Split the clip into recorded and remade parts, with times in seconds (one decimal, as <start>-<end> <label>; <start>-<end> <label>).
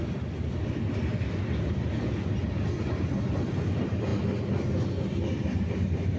0.0-6.2 recorded